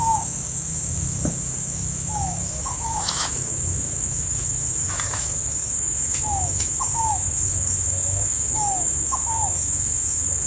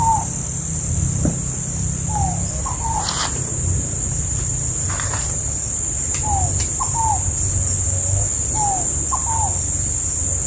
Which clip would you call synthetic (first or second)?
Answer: first